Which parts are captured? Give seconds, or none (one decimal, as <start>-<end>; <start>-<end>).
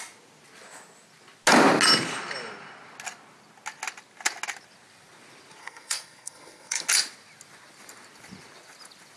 0.0-5.6; 6.9-9.2